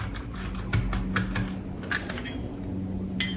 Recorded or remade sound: recorded